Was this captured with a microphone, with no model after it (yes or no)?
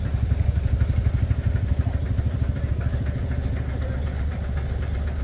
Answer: yes